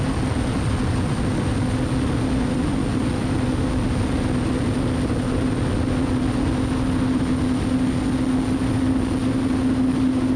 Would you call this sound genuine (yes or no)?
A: yes